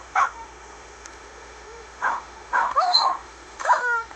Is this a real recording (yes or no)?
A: no